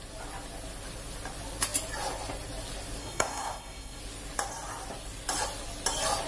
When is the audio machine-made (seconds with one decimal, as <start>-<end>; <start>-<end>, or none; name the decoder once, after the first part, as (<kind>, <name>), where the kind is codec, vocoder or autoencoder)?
3.0-4.0 (codec, SNAC)